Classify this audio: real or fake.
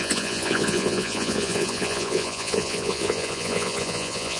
fake